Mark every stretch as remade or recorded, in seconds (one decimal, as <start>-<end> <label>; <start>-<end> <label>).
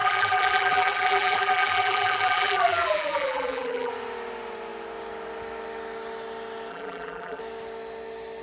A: 0.0-3.9 remade; 3.9-6.7 recorded; 6.7-7.4 remade; 7.4-8.4 recorded